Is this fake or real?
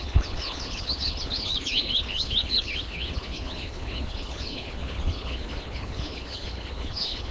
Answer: fake